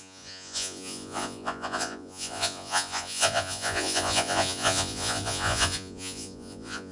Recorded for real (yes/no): no